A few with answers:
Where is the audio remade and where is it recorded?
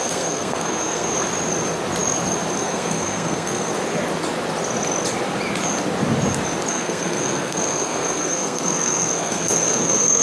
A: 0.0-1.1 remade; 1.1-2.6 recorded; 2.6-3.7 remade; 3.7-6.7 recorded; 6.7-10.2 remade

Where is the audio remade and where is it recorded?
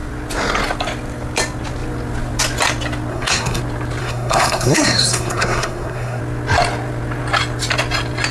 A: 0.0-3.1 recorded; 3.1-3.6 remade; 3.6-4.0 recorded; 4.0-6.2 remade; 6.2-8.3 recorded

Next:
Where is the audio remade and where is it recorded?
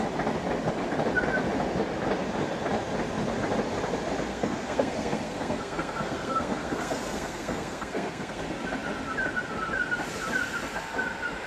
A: 0.0-4.3 recorded; 4.3-8.4 remade; 8.4-11.5 recorded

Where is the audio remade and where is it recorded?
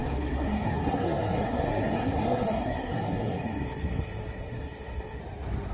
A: 0.0-5.2 remade; 5.2-5.7 recorded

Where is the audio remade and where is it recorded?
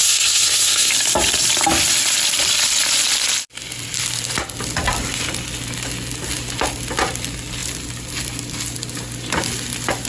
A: 0.0-0.9 remade; 0.9-10.1 recorded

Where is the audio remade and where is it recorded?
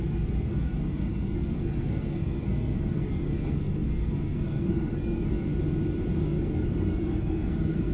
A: 0.0-5.5 remade; 5.5-6.2 recorded; 6.2-7.9 remade